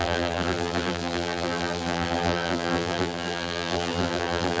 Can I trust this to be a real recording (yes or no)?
no